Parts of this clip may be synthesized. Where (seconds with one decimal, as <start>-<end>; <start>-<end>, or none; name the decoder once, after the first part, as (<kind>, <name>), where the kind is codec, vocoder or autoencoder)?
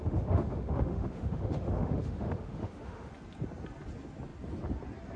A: 0.0-3.1 (autoencoder, DAC-VAE)